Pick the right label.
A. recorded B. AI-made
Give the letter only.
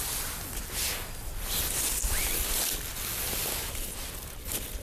A